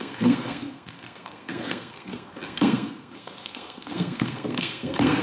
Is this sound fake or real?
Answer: fake